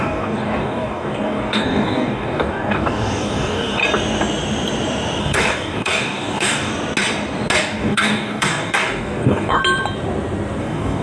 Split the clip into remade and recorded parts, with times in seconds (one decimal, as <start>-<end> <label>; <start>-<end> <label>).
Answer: 0.0-3.8 remade; 3.8-5.2 recorded; 5.2-6.7 remade; 6.7-7.6 recorded; 7.6-9.6 remade; 9.6-10.6 recorded; 10.6-11.0 remade